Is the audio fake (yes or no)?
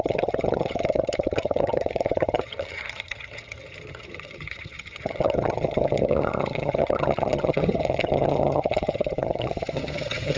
yes